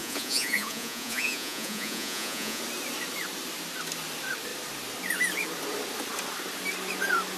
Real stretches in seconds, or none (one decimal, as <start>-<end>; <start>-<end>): 2.6-7.4